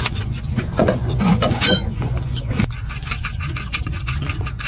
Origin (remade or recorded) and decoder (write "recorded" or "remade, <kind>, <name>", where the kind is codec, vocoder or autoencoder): remade, vocoder, Vocos